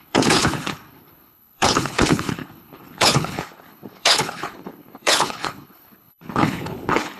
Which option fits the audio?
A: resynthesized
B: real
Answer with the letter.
A